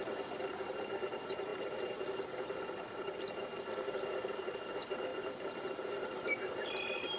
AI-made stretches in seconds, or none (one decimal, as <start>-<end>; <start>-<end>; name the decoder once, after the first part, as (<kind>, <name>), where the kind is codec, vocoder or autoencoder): 0.0-7.2 (vocoder, BigVGAN v2)